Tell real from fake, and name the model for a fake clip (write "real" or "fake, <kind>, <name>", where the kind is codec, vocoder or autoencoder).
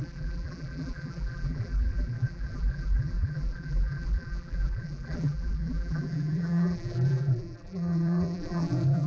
fake, vocoder, BigVGAN v2